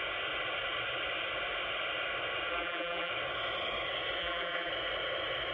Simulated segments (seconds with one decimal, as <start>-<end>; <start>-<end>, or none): 2.5-3.1; 4.2-4.7